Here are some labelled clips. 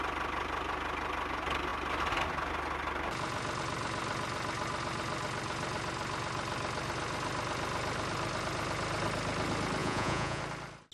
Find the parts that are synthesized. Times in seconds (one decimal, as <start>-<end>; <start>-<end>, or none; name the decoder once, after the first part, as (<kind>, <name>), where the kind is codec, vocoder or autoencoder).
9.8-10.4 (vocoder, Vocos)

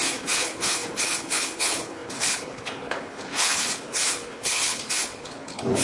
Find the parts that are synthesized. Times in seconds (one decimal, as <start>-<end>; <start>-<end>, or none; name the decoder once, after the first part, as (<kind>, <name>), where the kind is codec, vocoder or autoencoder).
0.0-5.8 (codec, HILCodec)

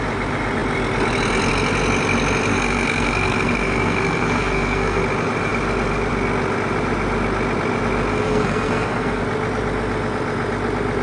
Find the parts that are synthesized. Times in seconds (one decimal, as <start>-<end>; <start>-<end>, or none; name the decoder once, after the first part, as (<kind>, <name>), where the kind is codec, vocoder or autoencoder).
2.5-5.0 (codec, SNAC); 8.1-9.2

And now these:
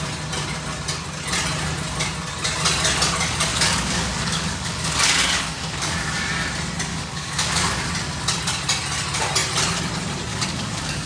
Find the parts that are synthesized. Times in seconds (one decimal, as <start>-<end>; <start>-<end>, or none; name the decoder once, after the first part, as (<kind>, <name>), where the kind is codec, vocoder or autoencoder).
3.5-6.3 (codec, DAC); 6.9-7.9; 10.3-11.1

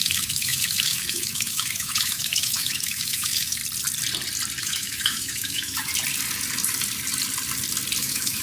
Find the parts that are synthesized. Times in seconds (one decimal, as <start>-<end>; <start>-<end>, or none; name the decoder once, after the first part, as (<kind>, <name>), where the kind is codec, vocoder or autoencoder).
0.0-3.6 (autoencoder, DAC-VAE); 4.6-5.9; 8.0-8.4

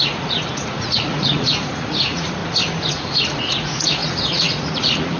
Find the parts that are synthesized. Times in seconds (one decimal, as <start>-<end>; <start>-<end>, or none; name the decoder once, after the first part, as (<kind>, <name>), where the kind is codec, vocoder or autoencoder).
0.0-2.4 (vocoder, Vocos); 2.9-5.2

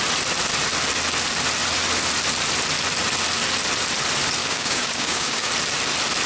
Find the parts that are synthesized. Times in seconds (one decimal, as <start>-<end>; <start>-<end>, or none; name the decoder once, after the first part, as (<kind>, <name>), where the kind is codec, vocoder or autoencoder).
4.4-5.5 (codec, DAC)